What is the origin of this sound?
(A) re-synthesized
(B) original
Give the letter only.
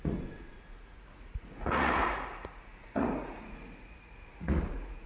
A